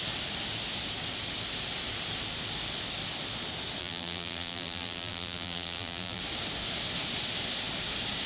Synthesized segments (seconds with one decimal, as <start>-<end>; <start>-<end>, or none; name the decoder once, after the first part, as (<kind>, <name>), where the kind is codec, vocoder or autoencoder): 3.8-6.2 (vocoder, BigVGAN v2)